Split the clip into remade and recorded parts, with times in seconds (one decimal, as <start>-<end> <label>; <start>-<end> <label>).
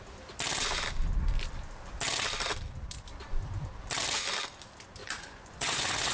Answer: 0.0-5.0 recorded; 5.0-6.1 remade